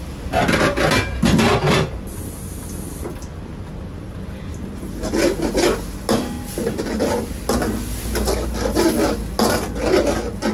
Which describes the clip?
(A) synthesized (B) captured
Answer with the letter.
B